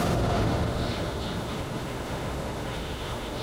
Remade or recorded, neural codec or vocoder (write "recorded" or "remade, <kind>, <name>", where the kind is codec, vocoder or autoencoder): remade, autoencoder, DAC-VAE